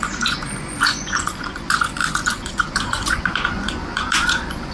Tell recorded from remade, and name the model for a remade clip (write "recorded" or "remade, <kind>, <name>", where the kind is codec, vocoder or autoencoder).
remade, vocoder, Vocos